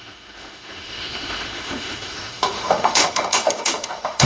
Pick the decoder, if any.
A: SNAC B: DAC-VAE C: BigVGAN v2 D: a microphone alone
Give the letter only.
B